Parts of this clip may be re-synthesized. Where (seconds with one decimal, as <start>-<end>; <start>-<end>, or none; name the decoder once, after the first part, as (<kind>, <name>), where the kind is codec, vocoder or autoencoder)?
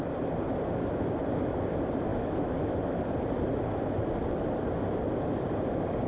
2.1-2.8 (autoencoder, DAC-VAE)